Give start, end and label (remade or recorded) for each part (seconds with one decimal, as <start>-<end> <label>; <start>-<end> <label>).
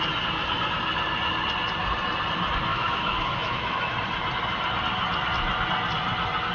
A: 0.0-2.7 recorded; 2.7-3.9 remade; 3.9-6.5 recorded